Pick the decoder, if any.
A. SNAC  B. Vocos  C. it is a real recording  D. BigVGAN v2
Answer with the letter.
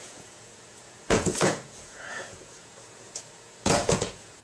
B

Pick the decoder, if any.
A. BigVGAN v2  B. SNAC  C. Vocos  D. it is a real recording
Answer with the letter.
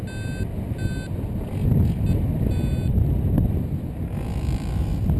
D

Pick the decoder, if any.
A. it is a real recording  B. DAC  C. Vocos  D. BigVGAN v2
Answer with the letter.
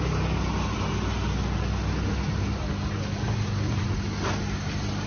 A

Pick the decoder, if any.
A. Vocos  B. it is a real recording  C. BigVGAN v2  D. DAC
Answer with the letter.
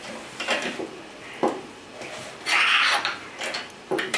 B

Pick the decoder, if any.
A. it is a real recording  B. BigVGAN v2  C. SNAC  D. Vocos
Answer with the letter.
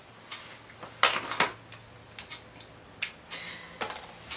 A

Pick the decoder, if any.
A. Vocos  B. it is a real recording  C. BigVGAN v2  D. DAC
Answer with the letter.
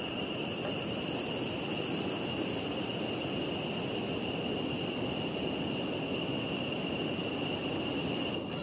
B